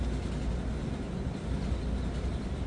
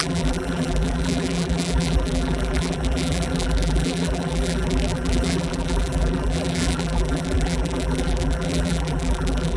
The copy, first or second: second